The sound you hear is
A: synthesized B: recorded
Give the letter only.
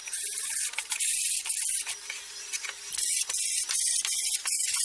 B